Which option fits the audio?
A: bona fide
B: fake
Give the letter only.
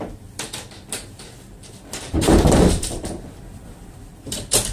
B